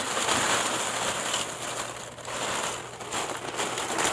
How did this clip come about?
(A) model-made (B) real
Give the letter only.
B